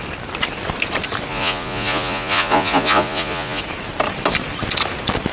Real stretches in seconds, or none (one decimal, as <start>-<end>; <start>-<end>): 0.0-1.3; 3.6-5.3

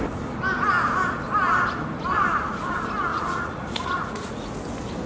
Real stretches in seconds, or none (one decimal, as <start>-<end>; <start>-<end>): 0.0-3.1; 4.5-5.1

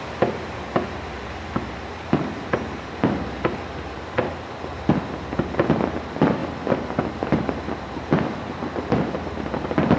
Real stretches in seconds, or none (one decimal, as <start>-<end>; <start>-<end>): 0.0-10.0

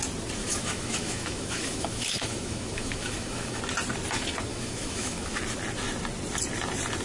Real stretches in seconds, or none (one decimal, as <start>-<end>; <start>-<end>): 0.0-0.4; 3.6-4.5; 5.4-7.0